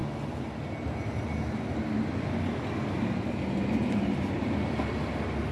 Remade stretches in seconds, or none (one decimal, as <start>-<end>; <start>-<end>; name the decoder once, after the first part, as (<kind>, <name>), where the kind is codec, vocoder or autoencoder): none